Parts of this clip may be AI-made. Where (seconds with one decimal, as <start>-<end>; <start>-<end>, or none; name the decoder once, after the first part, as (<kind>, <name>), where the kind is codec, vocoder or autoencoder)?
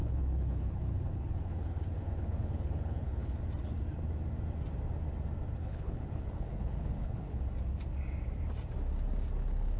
0.0-3.4 (codec, HILCodec); 5.6-7.4